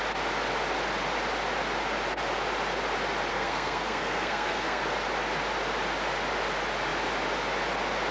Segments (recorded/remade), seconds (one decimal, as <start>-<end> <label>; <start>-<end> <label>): 0.0-3.3 recorded; 3.3-4.8 remade; 4.8-8.1 recorded